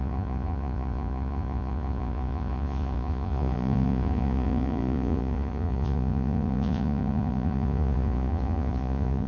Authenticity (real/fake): fake